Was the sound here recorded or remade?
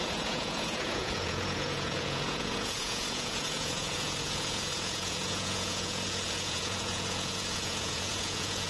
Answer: remade